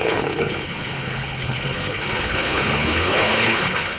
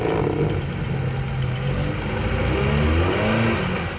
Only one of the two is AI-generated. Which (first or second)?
first